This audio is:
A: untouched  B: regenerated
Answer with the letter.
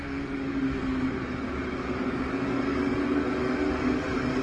B